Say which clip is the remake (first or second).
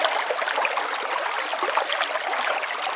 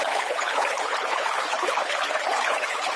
second